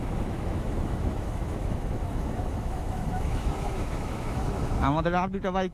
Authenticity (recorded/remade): remade